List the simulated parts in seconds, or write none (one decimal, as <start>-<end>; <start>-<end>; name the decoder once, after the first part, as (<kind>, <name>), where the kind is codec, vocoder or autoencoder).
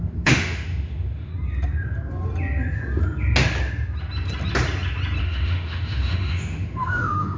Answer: 0.0-1.3 (autoencoder, DAC-VAE); 5.2-7.4